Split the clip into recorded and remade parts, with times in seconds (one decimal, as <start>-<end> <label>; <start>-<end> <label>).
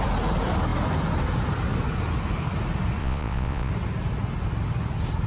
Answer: 0.0-3.0 recorded; 3.0-3.7 remade; 3.7-5.3 recorded